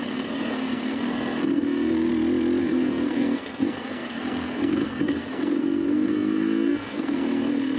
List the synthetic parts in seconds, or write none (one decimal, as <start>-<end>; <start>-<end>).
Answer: 0.0-2.1; 2.6-7.8